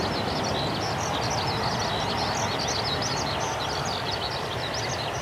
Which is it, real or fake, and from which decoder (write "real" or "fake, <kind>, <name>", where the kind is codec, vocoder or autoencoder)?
real